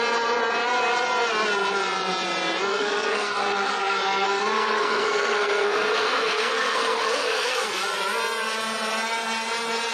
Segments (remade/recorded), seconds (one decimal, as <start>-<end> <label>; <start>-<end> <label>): 0.0-2.7 recorded; 2.7-7.8 remade; 7.8-9.9 recorded